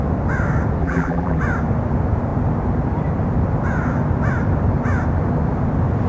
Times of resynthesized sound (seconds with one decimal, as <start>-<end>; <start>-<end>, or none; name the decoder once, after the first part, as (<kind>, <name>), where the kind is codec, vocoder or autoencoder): 0.8-1.4 (vocoder, BigVGAN v2)